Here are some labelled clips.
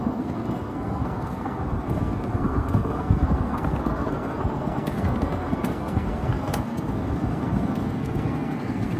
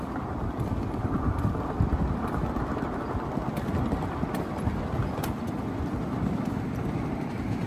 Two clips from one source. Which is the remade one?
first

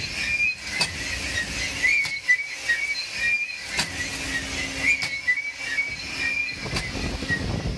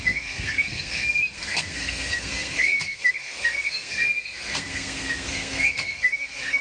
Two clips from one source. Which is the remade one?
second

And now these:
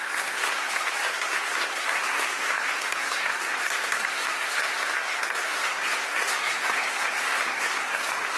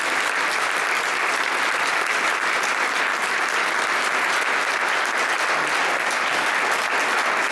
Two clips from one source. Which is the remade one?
first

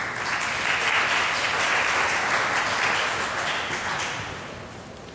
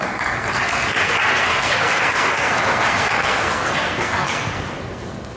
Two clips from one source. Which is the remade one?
second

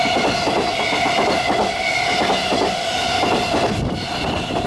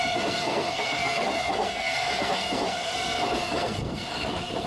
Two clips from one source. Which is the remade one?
second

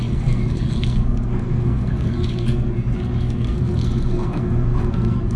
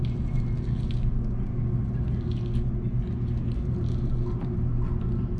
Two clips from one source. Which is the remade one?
first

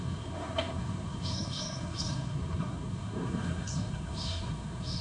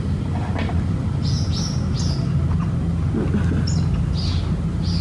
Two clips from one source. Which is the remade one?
first